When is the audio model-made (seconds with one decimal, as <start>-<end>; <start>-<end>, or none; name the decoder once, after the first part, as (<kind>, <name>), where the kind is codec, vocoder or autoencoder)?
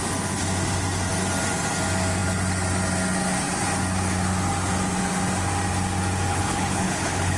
6.3-7.4 (codec, HILCodec)